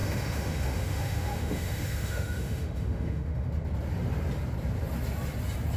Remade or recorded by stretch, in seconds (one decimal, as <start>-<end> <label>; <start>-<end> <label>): 0.0-3.5 remade; 3.5-5.8 recorded